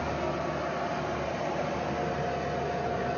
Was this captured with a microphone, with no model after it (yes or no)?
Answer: yes